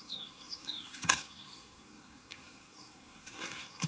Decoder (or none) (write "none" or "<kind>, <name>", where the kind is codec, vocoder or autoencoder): codec, SNAC